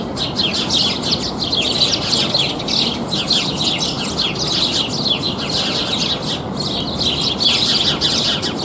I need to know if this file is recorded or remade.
recorded